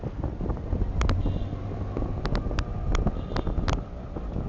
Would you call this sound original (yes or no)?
yes